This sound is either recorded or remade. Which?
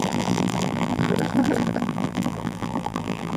remade